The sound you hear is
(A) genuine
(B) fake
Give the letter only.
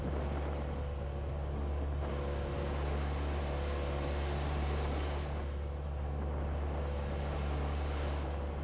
A